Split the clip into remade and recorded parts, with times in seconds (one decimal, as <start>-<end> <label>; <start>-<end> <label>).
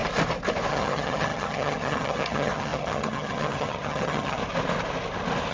0.0-0.7 recorded; 0.7-4.4 remade; 4.4-5.5 recorded